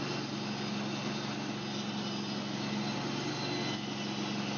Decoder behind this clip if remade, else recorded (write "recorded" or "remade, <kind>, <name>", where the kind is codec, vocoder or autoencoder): recorded